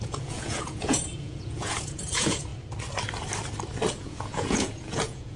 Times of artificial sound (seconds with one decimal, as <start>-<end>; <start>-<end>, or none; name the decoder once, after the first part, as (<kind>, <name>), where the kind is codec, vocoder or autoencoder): 0.0-2.5 (vocoder, Vocos); 3.9-5.4